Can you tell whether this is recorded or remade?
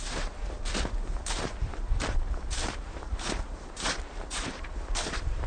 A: remade